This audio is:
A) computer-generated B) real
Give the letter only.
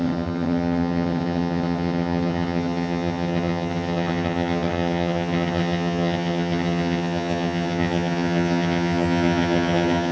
A